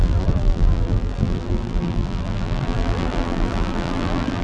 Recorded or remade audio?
remade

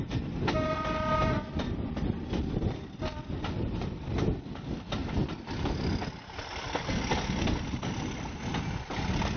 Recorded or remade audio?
recorded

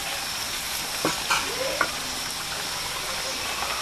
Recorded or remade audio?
recorded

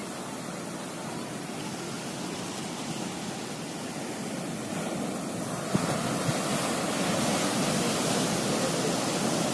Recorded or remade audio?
recorded